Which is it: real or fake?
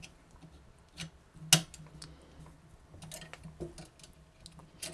real